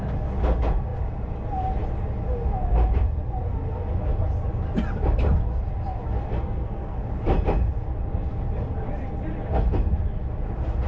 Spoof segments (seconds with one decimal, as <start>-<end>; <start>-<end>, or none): 6.3-7.0